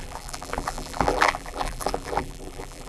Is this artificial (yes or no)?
yes